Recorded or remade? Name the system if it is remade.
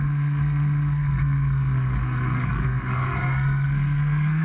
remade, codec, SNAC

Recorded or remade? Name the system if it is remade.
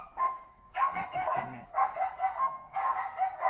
remade, codec, SNAC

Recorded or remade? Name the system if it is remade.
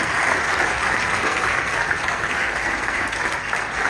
remade, codec, SNAC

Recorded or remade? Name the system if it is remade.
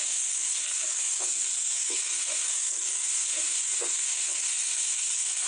remade, codec, SNAC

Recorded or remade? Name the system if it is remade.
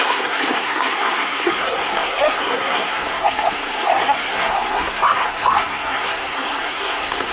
remade, codec, SNAC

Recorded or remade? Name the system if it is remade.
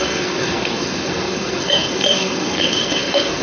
remade, codec, SNAC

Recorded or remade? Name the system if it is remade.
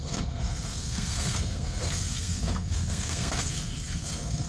remade, codec, SNAC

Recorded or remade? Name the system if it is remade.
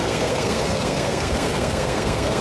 remade, codec, SNAC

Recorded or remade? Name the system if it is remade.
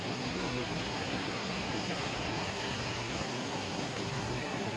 remade, codec, SNAC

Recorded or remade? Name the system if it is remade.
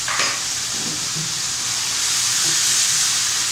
recorded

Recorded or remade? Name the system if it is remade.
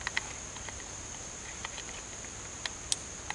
recorded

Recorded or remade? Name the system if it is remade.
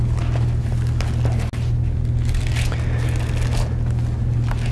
recorded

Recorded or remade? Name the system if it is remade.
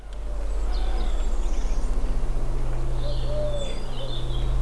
recorded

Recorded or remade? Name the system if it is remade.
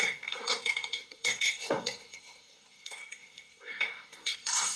remade, codec, SNAC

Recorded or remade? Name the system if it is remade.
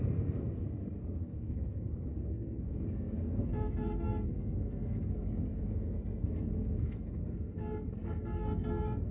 remade, codec, SNAC